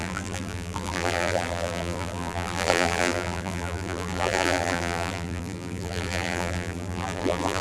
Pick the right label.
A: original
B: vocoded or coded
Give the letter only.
B